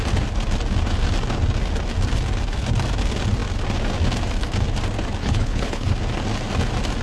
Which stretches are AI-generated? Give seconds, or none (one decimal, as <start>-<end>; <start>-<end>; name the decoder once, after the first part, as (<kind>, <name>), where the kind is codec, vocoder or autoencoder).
5.2-5.9 (codec, HILCodec)